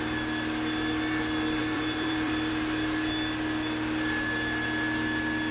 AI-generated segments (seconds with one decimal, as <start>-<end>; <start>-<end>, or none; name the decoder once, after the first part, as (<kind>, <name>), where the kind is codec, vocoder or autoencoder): 1.6-2.5 (vocoder, BigVGAN v2)